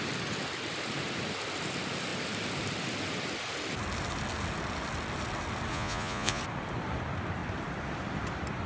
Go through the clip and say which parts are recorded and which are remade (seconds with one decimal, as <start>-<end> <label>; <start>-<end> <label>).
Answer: 0.0-5.7 recorded; 5.7-6.4 remade; 6.4-8.7 recorded